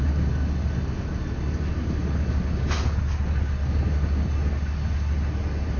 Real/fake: real